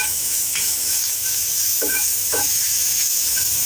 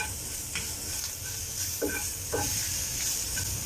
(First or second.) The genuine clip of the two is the second